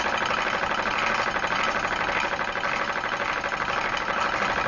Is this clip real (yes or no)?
yes